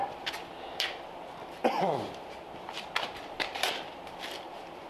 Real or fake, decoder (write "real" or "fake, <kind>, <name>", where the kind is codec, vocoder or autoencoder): fake, vocoder, BigVGAN v2